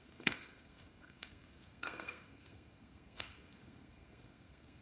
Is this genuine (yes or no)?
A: no